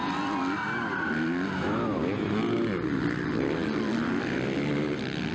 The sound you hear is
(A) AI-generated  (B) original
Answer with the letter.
B